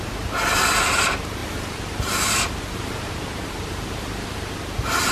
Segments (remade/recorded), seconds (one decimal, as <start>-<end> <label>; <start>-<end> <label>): 0.0-1.4 recorded; 1.4-4.5 remade; 4.5-5.1 recorded